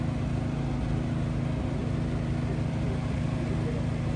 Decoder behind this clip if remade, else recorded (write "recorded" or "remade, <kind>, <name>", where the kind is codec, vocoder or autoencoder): recorded